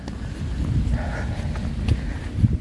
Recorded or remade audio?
recorded